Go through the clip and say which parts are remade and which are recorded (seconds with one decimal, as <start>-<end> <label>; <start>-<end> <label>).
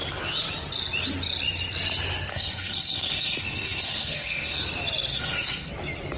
0.0-2.3 recorded; 2.3-4.6 remade; 4.6-5.1 recorded; 5.1-5.7 remade; 5.7-6.2 recorded